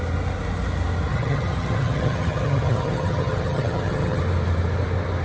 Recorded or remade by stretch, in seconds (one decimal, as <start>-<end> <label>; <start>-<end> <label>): 0.0-1.1 recorded; 1.1-4.2 remade; 4.2-5.2 recorded